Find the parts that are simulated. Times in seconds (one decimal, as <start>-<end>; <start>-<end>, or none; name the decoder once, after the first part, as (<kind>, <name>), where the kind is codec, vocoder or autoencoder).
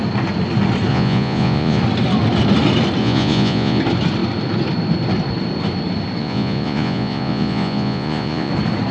0.9-1.8 (vocoder, Vocos); 3.0-3.8; 6.2-8.5